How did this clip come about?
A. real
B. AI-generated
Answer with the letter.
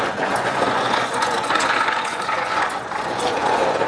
B